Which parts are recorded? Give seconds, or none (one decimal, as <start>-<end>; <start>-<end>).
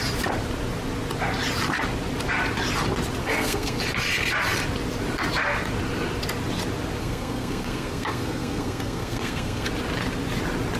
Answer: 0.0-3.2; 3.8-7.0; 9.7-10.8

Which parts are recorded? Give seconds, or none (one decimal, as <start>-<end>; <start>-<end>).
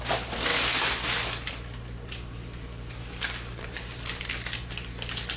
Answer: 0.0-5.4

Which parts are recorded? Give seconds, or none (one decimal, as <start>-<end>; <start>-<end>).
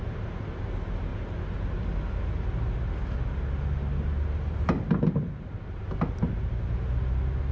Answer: 0.0-7.5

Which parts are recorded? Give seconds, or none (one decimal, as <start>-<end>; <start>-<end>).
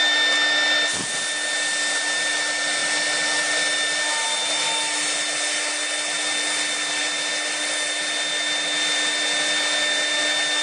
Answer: 0.0-10.6